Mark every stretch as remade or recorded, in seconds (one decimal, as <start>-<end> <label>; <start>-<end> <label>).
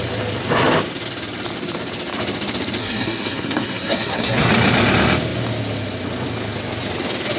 0.0-2.8 recorded; 2.8-4.5 remade; 4.5-7.4 recorded